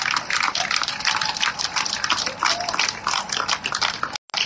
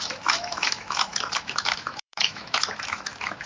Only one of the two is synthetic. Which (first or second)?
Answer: second